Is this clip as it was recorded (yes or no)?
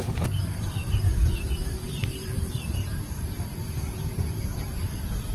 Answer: no